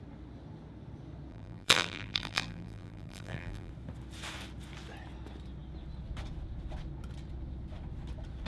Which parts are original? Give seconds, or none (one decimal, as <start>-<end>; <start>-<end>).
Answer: 0.0-1.3; 3.7-8.5

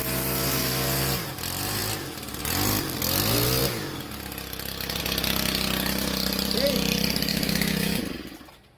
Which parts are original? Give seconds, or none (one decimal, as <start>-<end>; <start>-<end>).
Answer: 0.0-7.3; 8.0-8.8

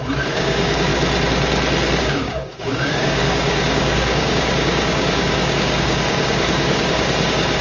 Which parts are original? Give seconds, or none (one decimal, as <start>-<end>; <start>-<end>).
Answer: 0.9-2.0

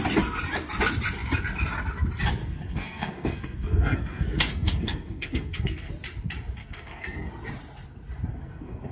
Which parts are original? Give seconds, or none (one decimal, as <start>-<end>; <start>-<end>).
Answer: 0.0-2.4; 5.9-6.6; 7.3-8.3

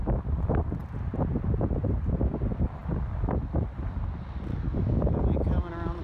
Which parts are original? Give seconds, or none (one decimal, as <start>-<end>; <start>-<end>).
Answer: 0.0-4.5; 5.2-6.0

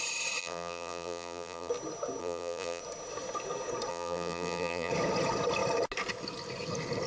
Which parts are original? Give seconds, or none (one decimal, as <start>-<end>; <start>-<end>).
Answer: 0.0-0.4; 1.7-2.2; 2.8-3.9; 4.9-7.1